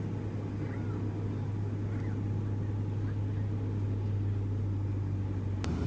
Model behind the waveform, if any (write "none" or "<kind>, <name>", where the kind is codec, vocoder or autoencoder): none